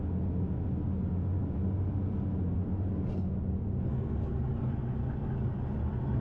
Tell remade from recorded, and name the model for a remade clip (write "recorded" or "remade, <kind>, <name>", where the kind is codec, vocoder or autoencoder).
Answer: recorded